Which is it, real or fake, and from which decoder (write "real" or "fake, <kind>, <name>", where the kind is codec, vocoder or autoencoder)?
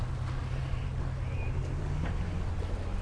real